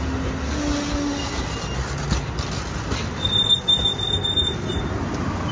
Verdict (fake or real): real